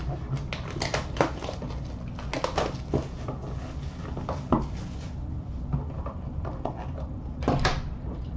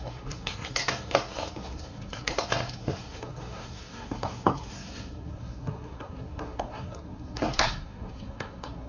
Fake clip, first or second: second